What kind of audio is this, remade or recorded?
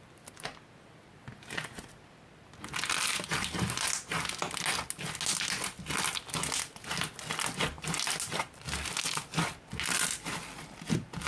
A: recorded